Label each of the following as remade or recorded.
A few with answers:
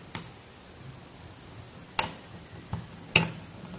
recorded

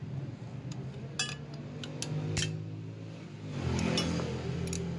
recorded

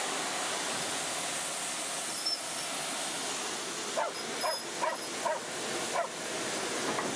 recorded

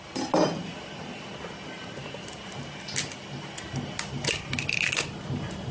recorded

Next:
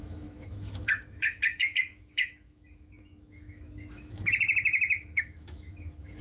remade